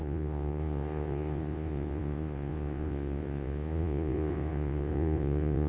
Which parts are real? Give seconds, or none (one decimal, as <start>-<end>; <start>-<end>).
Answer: none